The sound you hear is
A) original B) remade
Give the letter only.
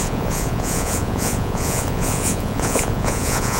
B